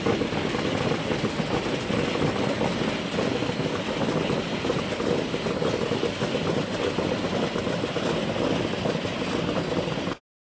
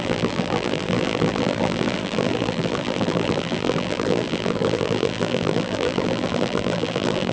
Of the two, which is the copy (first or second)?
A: second